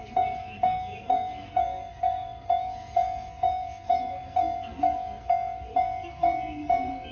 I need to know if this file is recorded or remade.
remade